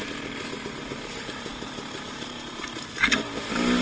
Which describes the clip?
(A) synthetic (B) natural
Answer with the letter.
B